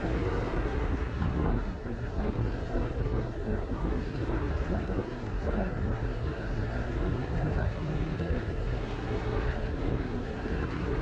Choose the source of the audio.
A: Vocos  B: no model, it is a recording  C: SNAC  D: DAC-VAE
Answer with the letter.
C